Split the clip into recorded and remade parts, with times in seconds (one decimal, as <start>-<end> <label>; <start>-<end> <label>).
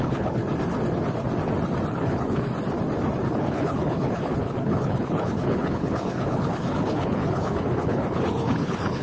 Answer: 0.0-0.4 remade; 0.4-1.9 recorded; 1.9-2.5 remade; 2.5-3.3 recorded; 3.3-9.0 remade